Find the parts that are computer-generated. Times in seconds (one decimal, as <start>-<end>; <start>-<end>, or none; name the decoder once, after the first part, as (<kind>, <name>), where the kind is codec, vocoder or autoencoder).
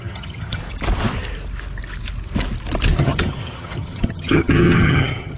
0.0-0.6 (vocoder, HiFi-GAN); 3.0-5.4